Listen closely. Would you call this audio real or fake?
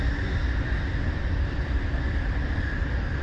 fake